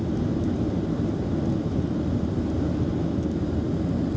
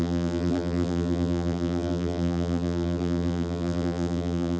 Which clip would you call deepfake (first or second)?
second